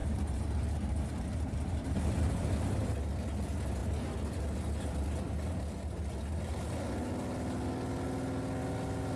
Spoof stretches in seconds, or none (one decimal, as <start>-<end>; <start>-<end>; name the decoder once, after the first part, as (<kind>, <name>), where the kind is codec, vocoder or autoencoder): 0.0-2.9 (vocoder, BigVGAN v2)

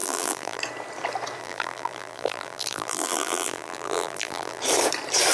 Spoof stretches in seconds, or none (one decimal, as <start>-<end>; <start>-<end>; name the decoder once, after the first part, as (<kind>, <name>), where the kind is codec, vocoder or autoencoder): 0.0-0.6 (vocoder, BigVGAN v2); 1.4-4.6

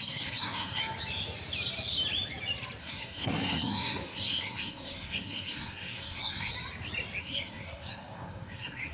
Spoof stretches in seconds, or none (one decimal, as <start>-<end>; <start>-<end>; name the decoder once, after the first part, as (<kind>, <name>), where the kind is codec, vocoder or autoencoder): 0.0-0.8 (codec, SNAC); 2.8-6.5; 7.2-8.9

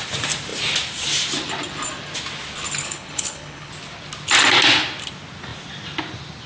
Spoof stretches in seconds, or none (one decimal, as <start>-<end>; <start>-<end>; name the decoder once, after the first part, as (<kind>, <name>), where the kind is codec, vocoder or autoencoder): 2.8-3.7 (codec, HILCodec)

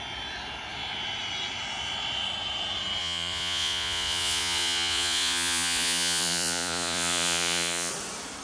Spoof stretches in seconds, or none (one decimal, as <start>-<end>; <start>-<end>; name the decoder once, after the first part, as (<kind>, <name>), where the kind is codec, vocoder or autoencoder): 3.0-7.9 (vocoder, Vocos)

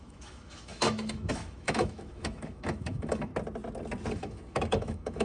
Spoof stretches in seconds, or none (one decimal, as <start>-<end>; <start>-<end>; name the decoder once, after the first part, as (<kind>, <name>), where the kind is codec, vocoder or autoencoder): 0.0-3.3 (autoencoder, DAC-VAE); 4.1-5.2

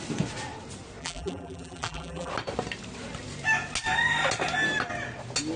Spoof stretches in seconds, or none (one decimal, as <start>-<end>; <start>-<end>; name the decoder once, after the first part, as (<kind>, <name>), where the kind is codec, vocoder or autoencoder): 1.0-2.3 (vocoder, BigVGAN v2)